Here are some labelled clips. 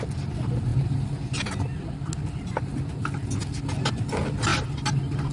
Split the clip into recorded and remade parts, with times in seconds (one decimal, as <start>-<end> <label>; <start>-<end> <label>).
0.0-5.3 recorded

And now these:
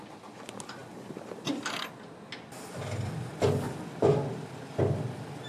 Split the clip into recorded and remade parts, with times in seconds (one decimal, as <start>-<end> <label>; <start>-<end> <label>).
0.0-5.5 recorded

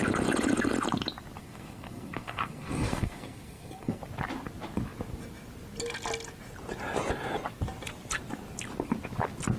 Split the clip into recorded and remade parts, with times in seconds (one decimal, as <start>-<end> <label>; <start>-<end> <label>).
0.0-1.4 recorded; 1.4-4.0 remade; 4.0-9.6 recorded